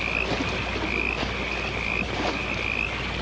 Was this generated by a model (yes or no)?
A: no